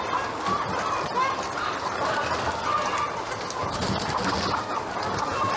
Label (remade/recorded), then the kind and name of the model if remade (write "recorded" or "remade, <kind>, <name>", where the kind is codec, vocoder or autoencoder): recorded